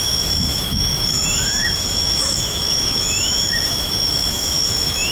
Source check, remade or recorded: remade